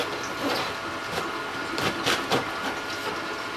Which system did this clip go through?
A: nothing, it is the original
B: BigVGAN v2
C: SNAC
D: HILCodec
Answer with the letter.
A